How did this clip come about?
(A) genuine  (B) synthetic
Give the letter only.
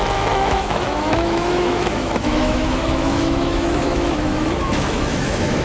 B